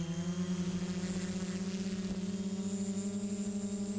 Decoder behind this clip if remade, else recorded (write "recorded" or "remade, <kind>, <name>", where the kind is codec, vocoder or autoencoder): recorded